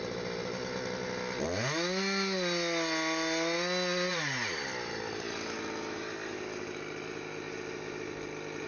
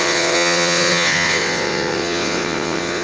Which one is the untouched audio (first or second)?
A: first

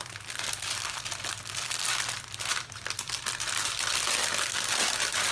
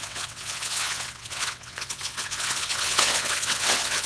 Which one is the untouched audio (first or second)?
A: first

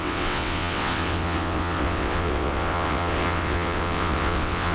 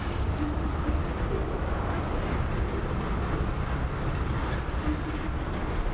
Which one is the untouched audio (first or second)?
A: second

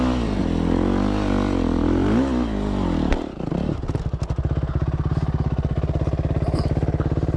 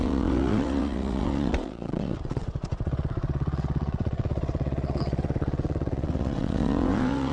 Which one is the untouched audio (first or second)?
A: first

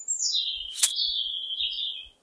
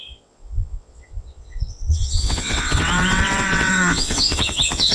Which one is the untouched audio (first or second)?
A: first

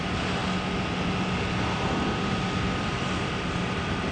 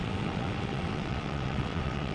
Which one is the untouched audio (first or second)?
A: first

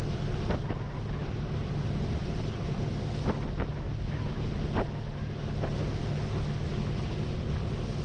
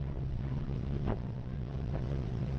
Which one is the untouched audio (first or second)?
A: first